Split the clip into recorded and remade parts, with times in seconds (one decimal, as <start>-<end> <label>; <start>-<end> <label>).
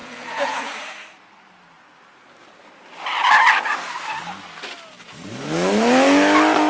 0.0-0.7 remade; 0.7-6.7 recorded